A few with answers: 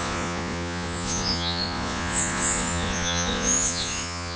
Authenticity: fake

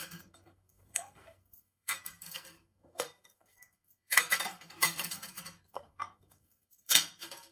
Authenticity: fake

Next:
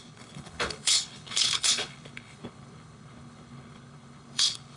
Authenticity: fake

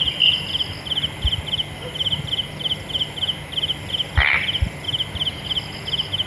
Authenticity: real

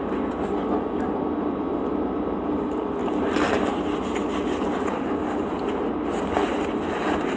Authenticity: real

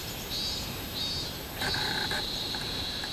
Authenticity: fake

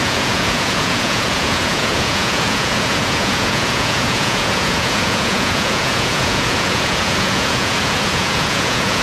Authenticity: fake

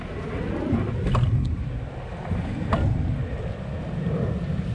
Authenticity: real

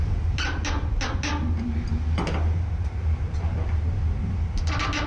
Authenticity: real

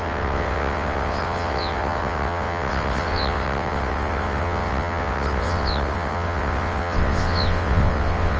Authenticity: fake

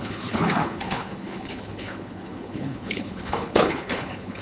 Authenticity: fake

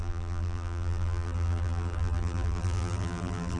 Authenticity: fake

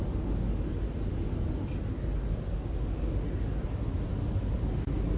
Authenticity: real